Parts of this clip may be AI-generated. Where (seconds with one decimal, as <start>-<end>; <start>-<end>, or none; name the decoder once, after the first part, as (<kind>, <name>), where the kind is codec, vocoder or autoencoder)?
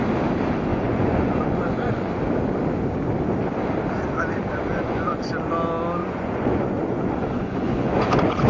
0.7-2.1 (vocoder, Vocos); 4.7-5.3; 6.0-8.5